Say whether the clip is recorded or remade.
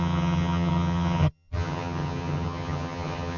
remade